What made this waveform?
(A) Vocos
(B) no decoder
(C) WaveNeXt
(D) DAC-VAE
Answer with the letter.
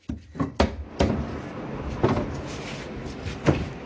B